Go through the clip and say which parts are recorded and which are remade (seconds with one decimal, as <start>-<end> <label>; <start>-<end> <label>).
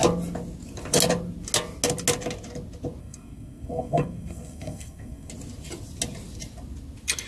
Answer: 0.0-3.0 recorded; 3.0-5.3 remade; 5.3-7.3 recorded